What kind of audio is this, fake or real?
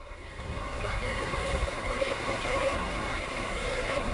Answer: fake